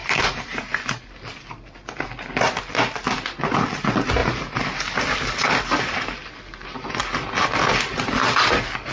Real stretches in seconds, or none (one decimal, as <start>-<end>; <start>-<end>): 0.0-8.9